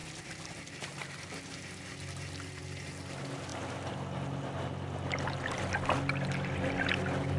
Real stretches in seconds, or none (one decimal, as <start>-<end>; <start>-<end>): 0.0-7.4